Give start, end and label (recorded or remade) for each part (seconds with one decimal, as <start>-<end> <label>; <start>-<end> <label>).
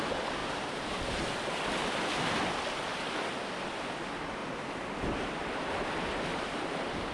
0.0-0.4 recorded; 0.4-1.0 remade; 1.0-7.1 recorded